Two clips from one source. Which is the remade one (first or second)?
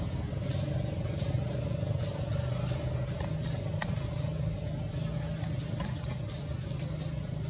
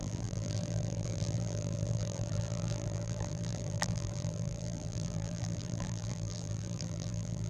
second